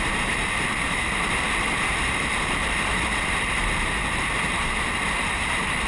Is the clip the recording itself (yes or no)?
no